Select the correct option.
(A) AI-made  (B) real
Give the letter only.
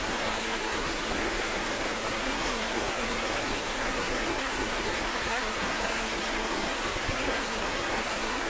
A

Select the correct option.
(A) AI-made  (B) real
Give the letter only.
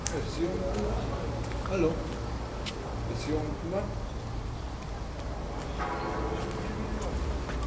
B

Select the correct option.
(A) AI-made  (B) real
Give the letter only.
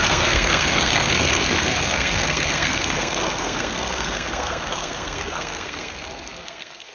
A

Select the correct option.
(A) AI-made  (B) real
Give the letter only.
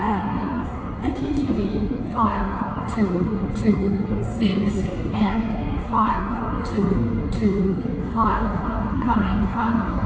A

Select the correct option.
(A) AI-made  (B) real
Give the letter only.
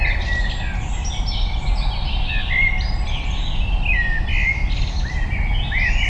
B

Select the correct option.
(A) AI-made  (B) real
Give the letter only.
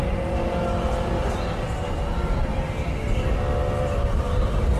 B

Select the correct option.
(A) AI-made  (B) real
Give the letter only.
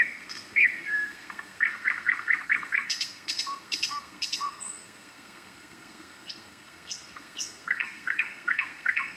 A